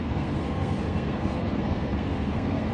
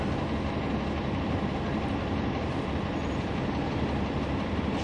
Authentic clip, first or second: second